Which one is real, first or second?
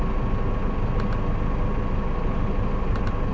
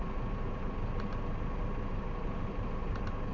first